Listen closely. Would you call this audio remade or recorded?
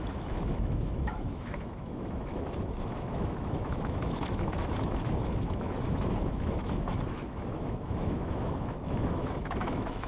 remade